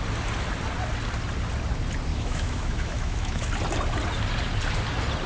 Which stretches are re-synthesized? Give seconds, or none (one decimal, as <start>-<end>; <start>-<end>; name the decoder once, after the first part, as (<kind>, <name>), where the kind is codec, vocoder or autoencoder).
2.1-3.5 (autoencoder, DAC-VAE)